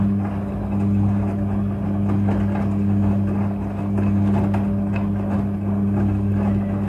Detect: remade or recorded recorded